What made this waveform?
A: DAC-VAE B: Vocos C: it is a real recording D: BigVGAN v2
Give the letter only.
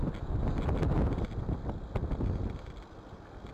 C